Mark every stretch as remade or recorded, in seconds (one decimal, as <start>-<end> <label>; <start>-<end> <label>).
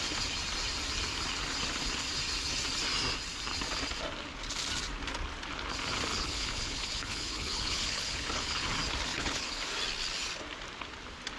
0.0-6.1 recorded; 6.1-8.7 remade; 8.7-9.1 recorded; 9.1-9.6 remade; 9.6-11.4 recorded